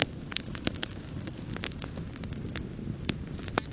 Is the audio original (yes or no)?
yes